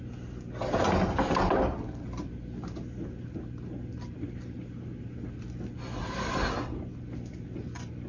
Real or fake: real